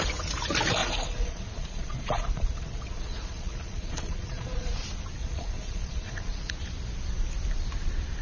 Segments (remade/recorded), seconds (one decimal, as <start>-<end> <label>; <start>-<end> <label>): 0.0-0.8 recorded; 0.8-4.7 remade; 4.7-5.2 recorded; 5.2-6.5 remade; 6.5-8.2 recorded